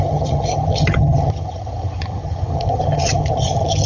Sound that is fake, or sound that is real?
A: fake